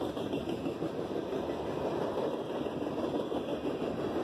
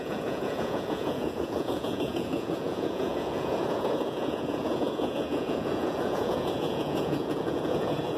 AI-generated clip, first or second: second